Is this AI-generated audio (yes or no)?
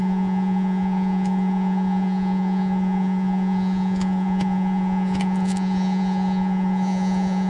yes